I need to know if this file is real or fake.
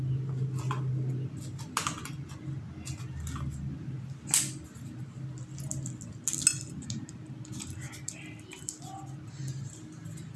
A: real